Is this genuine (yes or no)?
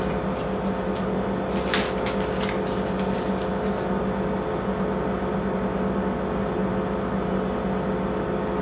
yes